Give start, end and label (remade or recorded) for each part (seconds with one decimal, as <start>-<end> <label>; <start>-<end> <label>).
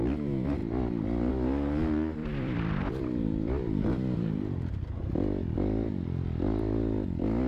0.0-0.6 recorded; 0.6-1.3 remade; 1.3-2.2 recorded; 2.2-6.6 remade; 6.6-7.5 recorded